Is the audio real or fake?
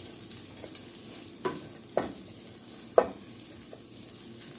real